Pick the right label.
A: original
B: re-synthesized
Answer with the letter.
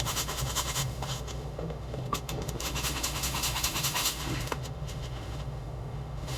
B